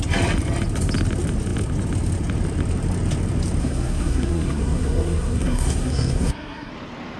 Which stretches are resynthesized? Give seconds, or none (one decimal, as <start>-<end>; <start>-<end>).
3.6-6.7